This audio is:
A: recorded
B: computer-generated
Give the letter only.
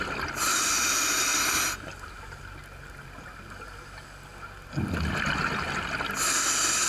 A